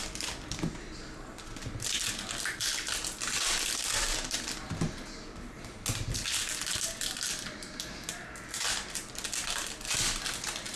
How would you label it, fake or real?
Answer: real